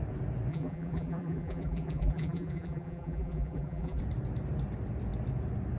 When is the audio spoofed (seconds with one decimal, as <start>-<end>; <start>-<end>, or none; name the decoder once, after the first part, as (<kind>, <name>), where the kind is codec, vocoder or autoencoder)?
0.5-4.0 (vocoder, BigVGAN v2)